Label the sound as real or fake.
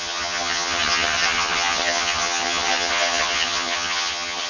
fake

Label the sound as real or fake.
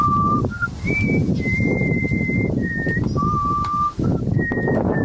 fake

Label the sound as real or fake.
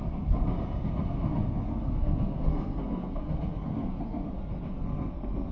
fake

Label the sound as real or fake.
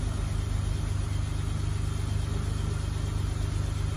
real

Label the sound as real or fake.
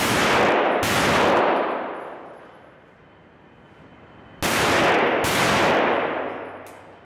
real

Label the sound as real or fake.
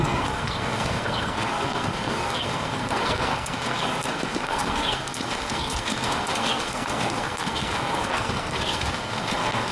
fake